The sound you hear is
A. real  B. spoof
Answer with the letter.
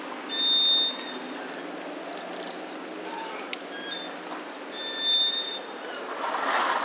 A